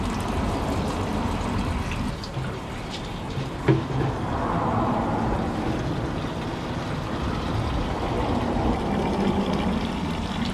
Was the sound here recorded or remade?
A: recorded